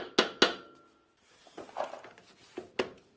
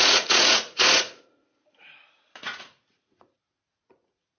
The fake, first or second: second